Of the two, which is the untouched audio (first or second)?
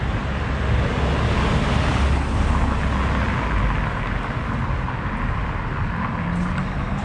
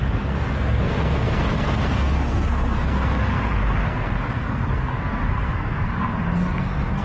first